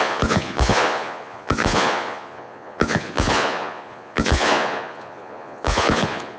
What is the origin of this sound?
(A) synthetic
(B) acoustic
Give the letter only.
A